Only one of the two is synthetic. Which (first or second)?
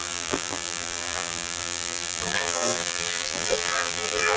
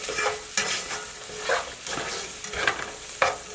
first